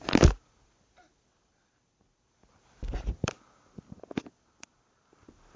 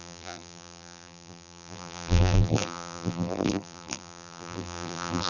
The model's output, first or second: second